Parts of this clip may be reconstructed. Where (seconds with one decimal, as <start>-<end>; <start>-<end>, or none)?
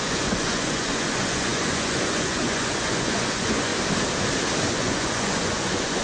0.0-3.7; 4.7-6.0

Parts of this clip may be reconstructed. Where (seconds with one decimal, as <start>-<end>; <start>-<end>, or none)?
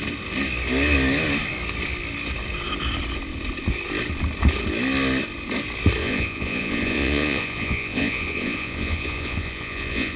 6.0-10.2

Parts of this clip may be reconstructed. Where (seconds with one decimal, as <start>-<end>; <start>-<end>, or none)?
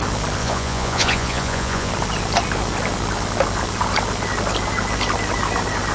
0.4-1.9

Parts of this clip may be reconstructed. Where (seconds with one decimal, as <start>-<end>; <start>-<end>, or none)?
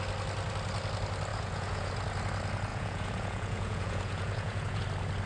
1.3-1.9; 2.7-4.8